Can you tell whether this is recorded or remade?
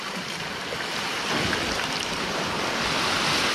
recorded